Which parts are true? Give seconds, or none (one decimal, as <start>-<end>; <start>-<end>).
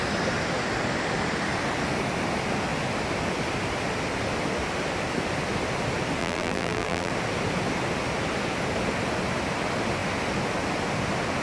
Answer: 0.0-6.2; 7.1-11.4